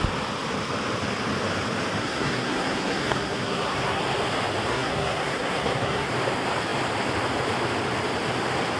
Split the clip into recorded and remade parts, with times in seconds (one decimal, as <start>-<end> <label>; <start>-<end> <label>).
0.0-2.0 recorded; 2.0-4.0 remade; 4.0-4.7 recorded; 4.7-6.1 remade; 6.1-8.8 recorded